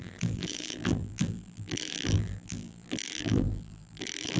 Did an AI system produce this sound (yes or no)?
yes